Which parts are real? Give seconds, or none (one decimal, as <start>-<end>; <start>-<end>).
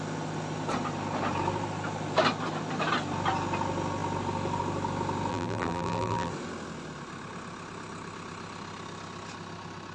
0.0-5.3; 6.3-9.9